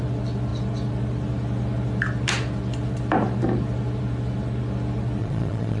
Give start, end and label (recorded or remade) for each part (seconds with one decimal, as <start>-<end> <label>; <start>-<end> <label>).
0.0-5.2 recorded; 5.2-5.8 remade